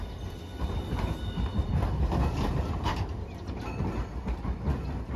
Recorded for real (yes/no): yes